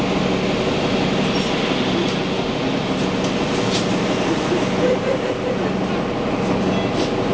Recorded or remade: recorded